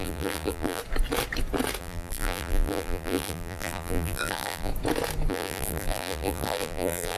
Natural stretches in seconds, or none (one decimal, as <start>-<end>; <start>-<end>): 0.8-1.8; 4.7-5.3